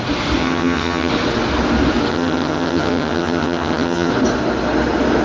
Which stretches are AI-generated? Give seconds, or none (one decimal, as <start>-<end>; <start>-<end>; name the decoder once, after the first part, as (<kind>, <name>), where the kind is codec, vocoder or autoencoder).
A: 0.4-1.1 (vocoder, HiFi-GAN); 2.1-4.1